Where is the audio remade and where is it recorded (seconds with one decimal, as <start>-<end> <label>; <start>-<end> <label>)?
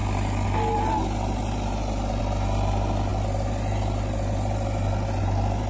0.0-5.7 recorded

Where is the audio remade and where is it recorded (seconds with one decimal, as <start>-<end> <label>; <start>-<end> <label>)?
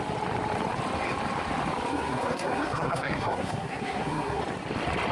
0.0-1.9 recorded; 1.9-4.4 remade; 4.4-5.1 recorded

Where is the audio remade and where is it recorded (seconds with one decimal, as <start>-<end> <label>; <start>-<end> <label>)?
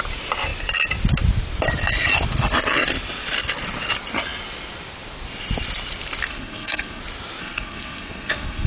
0.0-6.3 recorded; 6.3-7.0 remade; 7.0-7.4 recorded; 7.4-8.7 remade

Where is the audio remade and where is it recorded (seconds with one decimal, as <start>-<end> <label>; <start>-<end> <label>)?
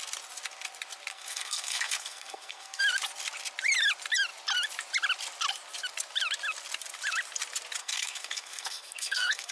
0.0-1.1 recorded; 1.1-2.8 remade; 2.8-7.8 recorded; 7.8-9.5 remade